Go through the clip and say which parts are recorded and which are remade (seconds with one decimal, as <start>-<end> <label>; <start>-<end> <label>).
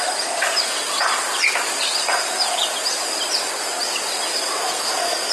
0.0-4.6 recorded; 4.6-5.3 remade